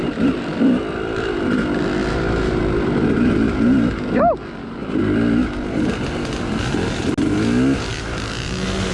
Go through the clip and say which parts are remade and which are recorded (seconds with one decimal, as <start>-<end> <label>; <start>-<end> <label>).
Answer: 0.0-8.9 recorded